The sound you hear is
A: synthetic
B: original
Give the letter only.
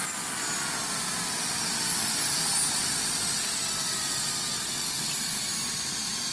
B